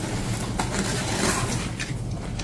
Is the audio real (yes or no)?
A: yes